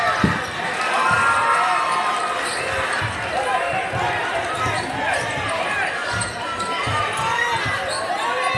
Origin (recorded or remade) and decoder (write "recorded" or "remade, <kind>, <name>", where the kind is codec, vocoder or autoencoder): recorded